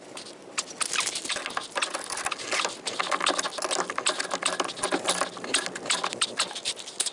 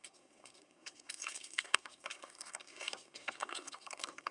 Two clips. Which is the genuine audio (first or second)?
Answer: first